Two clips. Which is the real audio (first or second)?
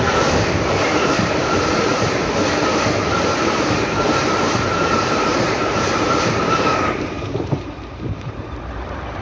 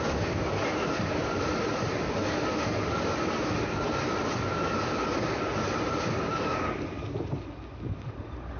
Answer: second